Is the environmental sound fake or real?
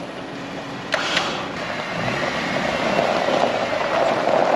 real